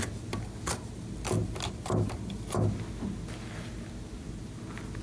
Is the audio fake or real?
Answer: real